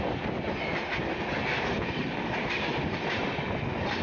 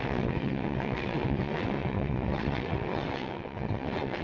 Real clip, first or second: first